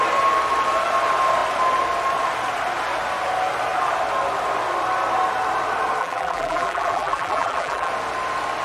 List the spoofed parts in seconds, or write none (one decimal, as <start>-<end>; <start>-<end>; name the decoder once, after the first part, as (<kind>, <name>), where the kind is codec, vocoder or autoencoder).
6.0-7.9 (vocoder, BigVGAN v2)